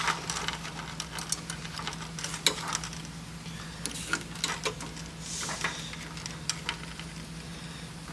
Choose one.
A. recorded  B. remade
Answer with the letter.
A